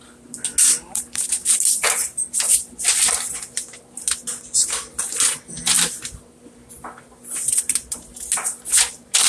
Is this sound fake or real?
real